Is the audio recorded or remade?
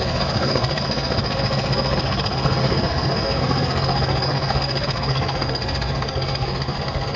remade